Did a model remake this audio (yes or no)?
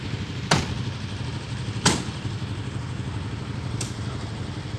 no